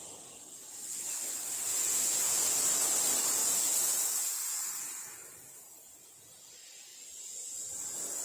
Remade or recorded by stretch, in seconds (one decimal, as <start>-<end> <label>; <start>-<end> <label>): 0.0-1.7 recorded; 1.7-2.5 remade; 2.5-3.4 recorded; 3.4-6.4 remade; 6.4-6.9 recorded; 6.9-7.7 remade; 7.7-8.2 recorded